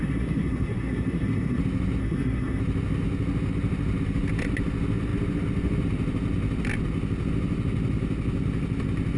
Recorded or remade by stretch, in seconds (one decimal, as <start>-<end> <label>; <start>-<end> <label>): 0.0-1.6 remade; 1.6-2.0 recorded; 2.0-2.6 remade; 2.6-9.2 recorded